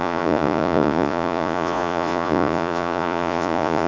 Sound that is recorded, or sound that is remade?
remade